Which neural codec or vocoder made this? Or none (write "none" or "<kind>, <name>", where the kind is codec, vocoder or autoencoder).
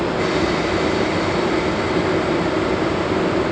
none